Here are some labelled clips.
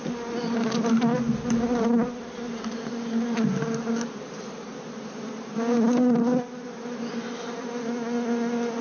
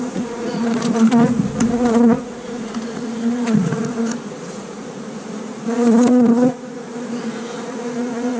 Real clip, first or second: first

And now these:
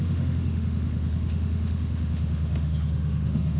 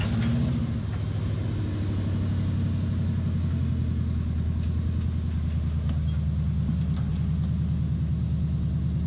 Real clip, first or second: second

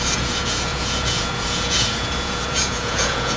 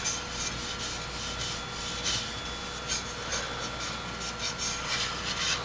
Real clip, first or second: second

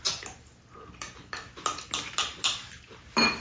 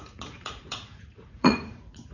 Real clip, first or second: first